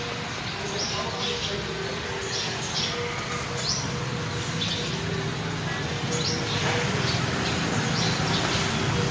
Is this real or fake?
real